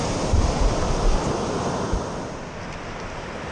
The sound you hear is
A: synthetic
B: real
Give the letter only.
A